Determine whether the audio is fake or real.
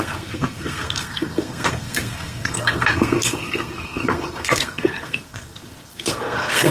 fake